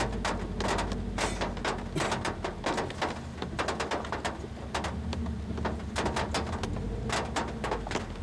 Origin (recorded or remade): recorded